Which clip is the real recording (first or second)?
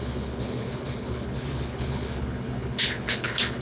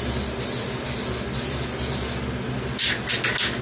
second